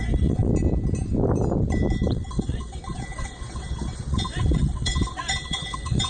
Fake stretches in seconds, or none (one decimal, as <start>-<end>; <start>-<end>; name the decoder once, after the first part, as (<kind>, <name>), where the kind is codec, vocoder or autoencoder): 0.0-0.5 (vocoder, WaveNeXt); 2.1-6.1